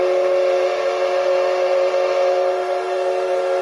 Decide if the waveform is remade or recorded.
recorded